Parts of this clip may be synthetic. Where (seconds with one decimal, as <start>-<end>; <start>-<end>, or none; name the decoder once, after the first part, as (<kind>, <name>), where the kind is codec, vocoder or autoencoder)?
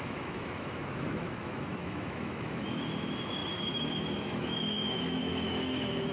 0.0-6.1 (autoencoder, DAC-VAE)